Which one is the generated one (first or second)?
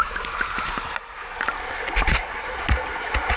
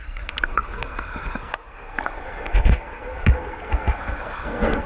second